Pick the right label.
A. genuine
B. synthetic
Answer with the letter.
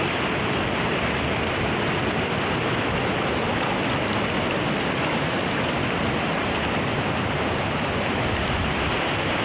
A